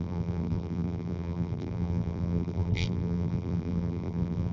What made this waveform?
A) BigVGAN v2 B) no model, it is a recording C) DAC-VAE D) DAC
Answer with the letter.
A